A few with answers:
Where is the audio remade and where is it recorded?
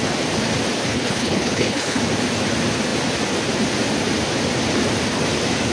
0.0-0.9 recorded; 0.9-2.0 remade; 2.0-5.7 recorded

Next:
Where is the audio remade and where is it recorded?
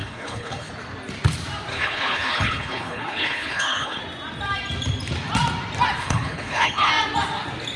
0.0-0.7 remade; 0.7-1.7 recorded; 1.7-4.0 remade; 4.0-6.0 recorded; 6.0-6.9 remade; 6.9-7.8 recorded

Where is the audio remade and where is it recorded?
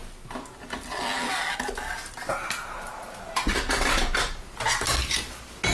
0.0-5.7 recorded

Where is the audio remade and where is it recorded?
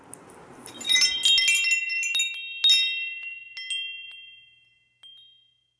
0.0-5.8 recorded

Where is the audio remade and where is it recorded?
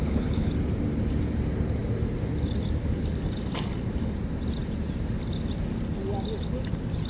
0.0-0.5 remade; 0.5-7.1 recorded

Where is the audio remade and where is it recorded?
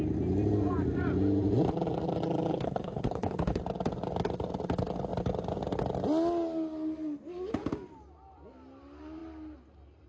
0.0-2.5 recorded; 2.5-3.6 remade; 3.6-10.1 recorded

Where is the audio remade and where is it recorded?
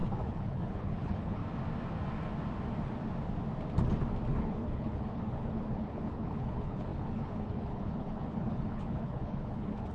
0.0-1.4 remade; 1.4-4.3 recorded; 4.3-9.9 remade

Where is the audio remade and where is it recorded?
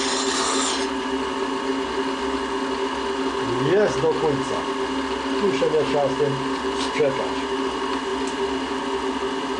0.0-9.6 recorded